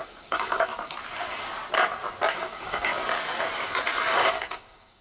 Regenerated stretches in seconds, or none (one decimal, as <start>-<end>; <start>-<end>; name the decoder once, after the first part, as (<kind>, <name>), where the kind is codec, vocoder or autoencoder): 0.0-0.7 (codec, DAC); 2.3-2.9; 4.1-5.0

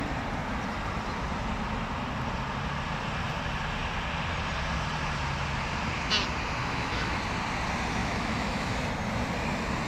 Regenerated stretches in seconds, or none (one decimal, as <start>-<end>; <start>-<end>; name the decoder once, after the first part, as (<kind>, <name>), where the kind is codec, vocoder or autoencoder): 6.6-7.2 (autoencoder, DAC-VAE); 8.0-8.8

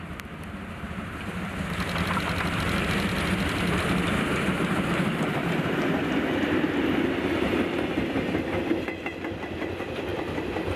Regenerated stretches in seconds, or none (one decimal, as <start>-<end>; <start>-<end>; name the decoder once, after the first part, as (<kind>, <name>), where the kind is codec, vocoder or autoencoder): none

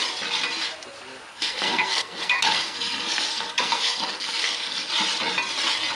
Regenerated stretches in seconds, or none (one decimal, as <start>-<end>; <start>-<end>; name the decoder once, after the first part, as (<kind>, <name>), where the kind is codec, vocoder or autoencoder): 1.3-4.9 (codec, SNAC)